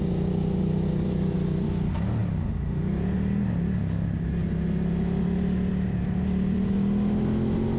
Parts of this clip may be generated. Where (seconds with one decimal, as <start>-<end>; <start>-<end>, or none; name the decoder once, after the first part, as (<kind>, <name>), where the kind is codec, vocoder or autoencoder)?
none